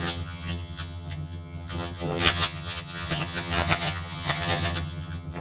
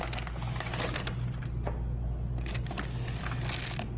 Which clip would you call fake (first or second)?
first